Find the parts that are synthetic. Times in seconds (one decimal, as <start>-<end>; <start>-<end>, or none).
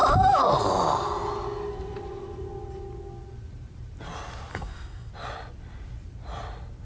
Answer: 4.5-5.1